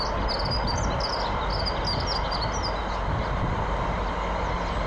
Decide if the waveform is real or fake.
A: real